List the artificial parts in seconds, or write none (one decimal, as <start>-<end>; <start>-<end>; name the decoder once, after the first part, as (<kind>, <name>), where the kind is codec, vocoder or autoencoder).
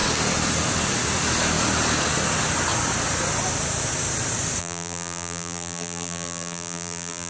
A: 4.6-7.3 (vocoder, BigVGAN v2)